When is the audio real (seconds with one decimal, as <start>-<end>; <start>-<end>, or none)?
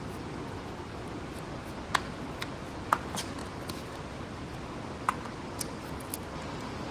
0.0-6.9